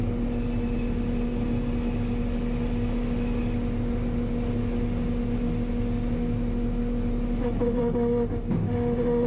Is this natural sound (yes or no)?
yes